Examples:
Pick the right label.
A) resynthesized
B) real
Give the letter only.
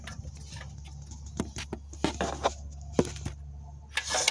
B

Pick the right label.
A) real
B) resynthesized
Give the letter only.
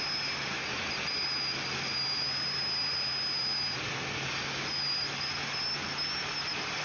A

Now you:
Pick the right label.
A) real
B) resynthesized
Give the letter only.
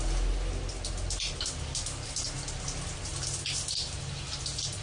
A